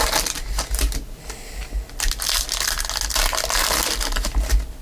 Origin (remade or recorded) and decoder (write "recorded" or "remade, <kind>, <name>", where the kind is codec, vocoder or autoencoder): recorded